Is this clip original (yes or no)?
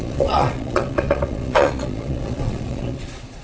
no